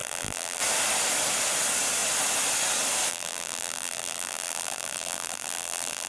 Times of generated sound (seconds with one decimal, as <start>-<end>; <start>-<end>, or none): 0.0-0.6; 3.1-6.1